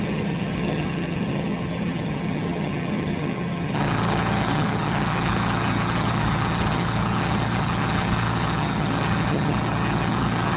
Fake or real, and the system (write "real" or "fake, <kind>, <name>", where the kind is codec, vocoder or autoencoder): fake, vocoder, HiFi-GAN